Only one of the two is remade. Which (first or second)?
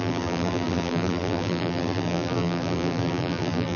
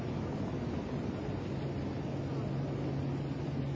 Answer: first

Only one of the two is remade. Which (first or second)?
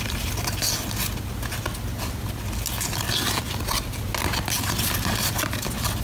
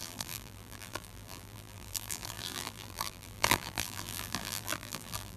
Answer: second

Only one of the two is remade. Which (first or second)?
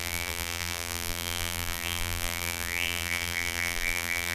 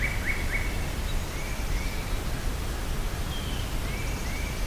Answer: first